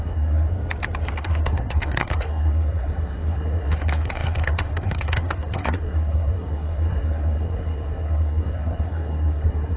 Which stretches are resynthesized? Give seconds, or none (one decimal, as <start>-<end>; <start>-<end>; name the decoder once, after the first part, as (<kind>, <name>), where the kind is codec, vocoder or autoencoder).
0.0-0.5 (codec, SNAC); 1.2-9.8